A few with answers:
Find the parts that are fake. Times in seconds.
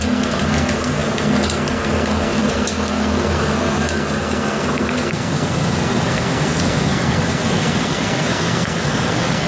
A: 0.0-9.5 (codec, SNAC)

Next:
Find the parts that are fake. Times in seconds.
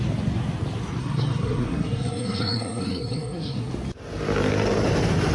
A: 1.0-3.7 (codec, SNAC)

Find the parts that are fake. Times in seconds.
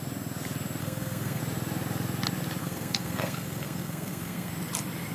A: 0.8-1.4 (codec, SNAC); 2.6-4.5